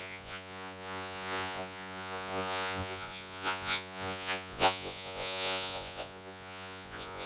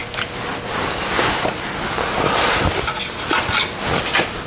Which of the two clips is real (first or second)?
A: second